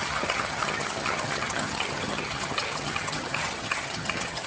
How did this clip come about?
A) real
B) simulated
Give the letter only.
B